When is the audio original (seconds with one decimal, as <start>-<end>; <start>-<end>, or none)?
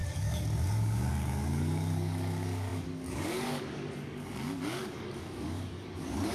none